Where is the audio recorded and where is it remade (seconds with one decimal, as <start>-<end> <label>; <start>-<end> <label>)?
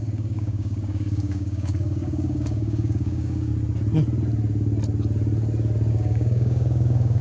0.0-3.5 remade; 3.5-5.9 recorded; 5.9-7.2 remade